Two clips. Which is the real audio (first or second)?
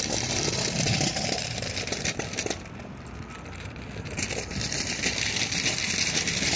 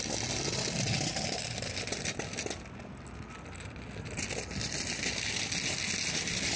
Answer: second